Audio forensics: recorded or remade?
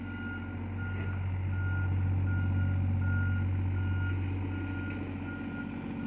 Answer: recorded